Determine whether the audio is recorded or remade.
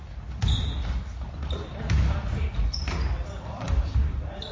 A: recorded